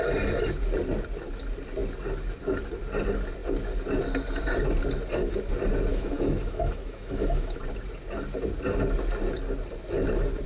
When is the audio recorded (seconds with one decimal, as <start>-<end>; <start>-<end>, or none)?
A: 0.0-5.9; 7.6-10.5